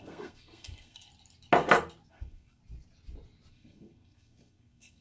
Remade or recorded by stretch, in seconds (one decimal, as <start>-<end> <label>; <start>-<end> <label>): 0.0-1.1 remade; 1.1-2.1 recorded; 2.1-2.6 remade; 2.6-3.5 recorded; 3.5-5.0 remade